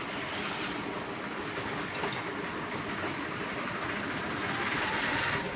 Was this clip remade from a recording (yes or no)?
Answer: no